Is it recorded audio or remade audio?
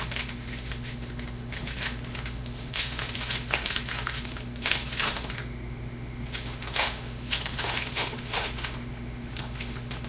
remade